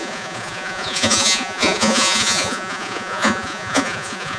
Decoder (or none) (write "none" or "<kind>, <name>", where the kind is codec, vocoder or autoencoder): vocoder, Vocos